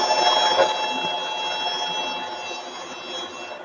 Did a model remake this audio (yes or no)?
no